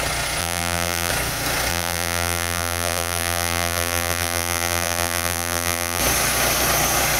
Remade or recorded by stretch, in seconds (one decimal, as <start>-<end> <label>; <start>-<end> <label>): 0.0-0.4 recorded; 0.4-1.1 remade; 1.1-1.7 recorded; 1.7-6.0 remade; 6.0-7.2 recorded